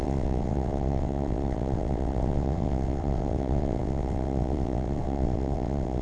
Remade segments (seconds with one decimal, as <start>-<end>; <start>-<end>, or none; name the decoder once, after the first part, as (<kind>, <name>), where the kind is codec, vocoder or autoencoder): 0.0-6.0 (vocoder, WaveNeXt)

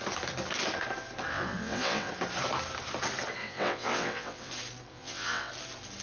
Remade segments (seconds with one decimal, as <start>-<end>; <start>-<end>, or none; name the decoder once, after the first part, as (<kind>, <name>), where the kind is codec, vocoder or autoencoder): 1.3-2.1 (vocoder, WaveNeXt); 3.4-4.5; 4.9-5.5